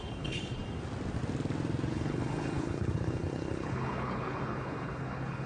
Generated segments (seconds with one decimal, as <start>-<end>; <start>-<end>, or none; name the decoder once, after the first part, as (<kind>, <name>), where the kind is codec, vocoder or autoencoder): 0.0-0.6 (codec, HILCodec); 1.9-5.5